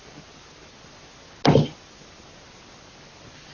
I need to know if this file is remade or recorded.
recorded